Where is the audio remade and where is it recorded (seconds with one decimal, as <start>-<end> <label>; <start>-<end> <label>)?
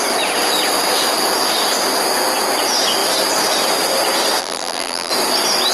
0.0-4.4 recorded; 4.4-5.1 remade; 5.1-5.7 recorded